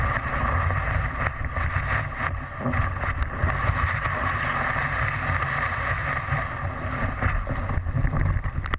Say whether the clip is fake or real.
real